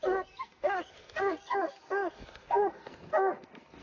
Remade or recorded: remade